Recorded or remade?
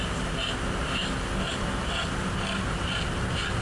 recorded